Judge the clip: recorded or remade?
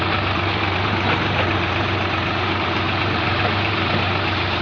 remade